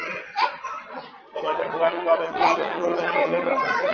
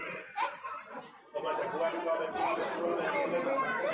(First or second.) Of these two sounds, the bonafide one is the second